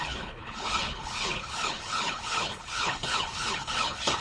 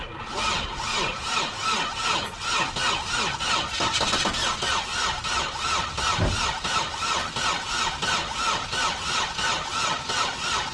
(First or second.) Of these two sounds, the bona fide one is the second